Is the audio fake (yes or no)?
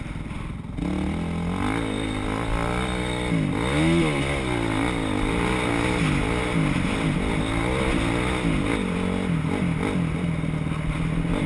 no